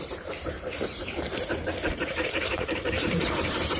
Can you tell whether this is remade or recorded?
remade